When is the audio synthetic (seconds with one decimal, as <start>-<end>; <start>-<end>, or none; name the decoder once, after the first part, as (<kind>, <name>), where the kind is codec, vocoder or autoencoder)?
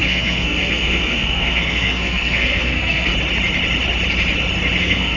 0.0-3.1 (codec, SNAC); 4.8-5.2